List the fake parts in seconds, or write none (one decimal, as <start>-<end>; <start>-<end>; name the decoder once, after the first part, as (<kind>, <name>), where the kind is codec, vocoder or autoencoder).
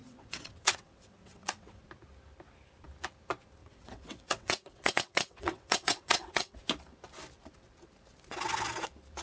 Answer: 0.0-1.8 (vocoder, WaveNeXt); 3.6-6.6